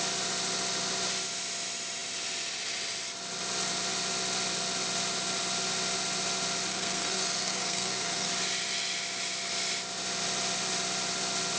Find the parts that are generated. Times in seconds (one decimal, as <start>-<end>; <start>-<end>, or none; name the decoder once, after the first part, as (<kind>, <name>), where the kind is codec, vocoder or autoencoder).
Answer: 6.7-8.3 (codec, SNAC)